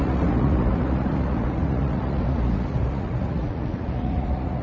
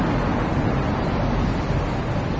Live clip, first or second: second